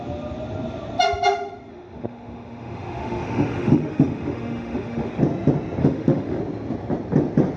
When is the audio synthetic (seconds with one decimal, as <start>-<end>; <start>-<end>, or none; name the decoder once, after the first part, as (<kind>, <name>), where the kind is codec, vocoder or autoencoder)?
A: 1.7-5.1 (autoencoder, DAC-VAE); 5.8-6.4